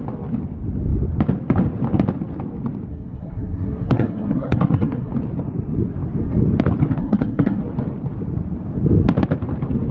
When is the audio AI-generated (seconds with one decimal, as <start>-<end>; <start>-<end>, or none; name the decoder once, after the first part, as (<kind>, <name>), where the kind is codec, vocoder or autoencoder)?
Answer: 2.9-5.1 (codec, SNAC); 7.0-7.6